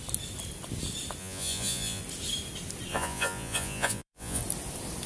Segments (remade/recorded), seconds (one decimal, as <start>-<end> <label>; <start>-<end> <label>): 0.0-1.2 recorded; 1.2-2.0 remade; 2.0-2.9 recorded; 2.9-4.4 remade; 4.4-5.1 recorded